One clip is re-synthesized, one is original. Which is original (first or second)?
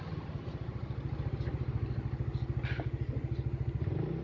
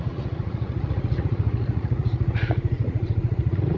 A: first